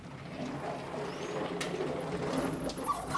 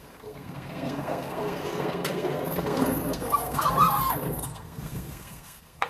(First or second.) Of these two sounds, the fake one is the second